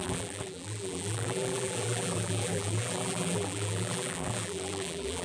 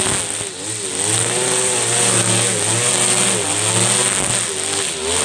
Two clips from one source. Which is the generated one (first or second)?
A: first